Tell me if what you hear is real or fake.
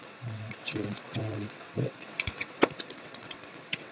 fake